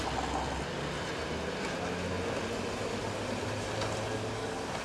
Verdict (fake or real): real